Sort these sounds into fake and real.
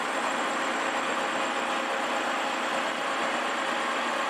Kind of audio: real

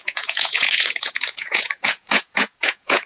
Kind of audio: fake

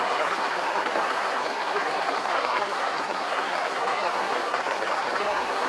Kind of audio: fake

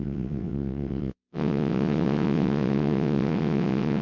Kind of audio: fake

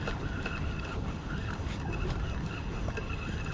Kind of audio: real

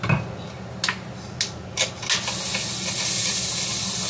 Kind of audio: real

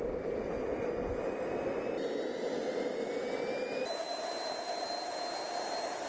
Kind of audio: real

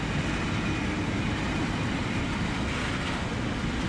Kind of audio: real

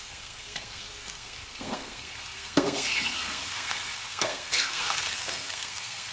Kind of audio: fake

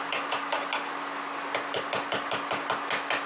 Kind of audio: real